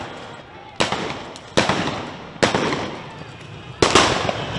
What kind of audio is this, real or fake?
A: real